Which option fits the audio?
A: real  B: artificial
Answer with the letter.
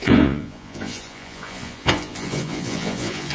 B